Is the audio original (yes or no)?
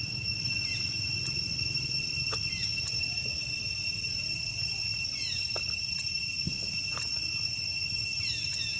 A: yes